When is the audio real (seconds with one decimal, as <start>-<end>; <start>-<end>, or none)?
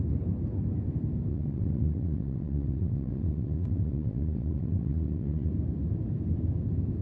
0.0-1.3; 5.5-7.0